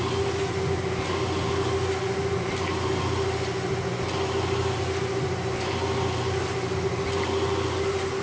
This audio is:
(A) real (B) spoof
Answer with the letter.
A